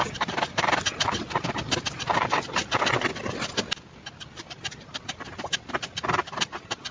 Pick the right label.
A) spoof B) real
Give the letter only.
B